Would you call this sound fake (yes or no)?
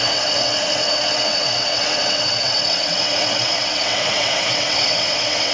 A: yes